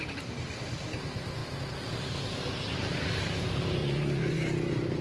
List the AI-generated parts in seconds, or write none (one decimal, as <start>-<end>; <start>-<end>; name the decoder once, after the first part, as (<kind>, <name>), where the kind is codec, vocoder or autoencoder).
3.8-4.5 (vocoder, Vocos)